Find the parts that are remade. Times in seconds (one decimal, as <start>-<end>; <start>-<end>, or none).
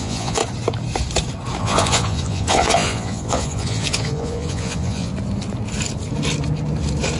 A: 0.0-0.4; 1.6-5.1